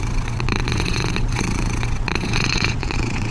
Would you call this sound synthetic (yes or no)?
yes